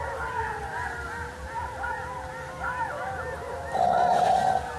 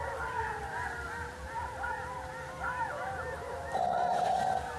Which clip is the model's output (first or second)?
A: second